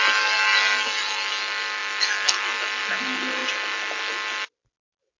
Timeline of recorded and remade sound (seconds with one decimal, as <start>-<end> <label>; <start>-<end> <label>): 0.0-5.2 recorded